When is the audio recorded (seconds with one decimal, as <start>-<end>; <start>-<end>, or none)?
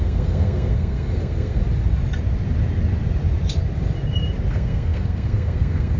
1.6-4.5